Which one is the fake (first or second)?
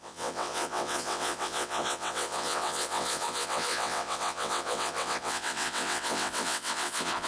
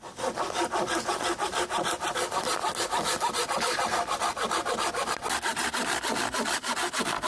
first